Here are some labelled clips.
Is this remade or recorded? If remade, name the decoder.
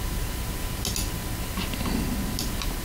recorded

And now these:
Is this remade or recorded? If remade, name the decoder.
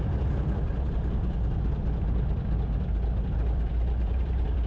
recorded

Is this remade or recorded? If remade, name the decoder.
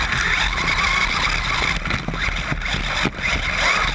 recorded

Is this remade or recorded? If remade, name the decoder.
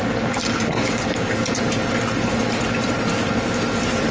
recorded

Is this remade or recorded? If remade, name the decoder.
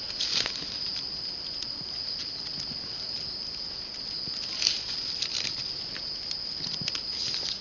recorded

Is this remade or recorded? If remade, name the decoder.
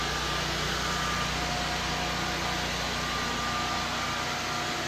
recorded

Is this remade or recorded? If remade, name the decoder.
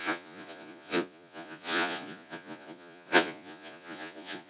remade, vocoder, Vocos